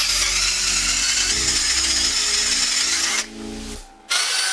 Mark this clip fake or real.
real